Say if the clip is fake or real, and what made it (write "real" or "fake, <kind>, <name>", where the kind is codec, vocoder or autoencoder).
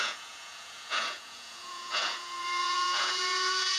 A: fake, vocoder, Vocos